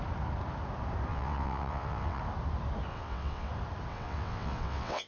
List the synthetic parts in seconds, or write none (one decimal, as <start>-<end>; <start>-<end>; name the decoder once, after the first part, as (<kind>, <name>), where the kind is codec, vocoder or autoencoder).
1.1-2.2 (vocoder, WaveNeXt); 2.9-3.5; 3.9-5.1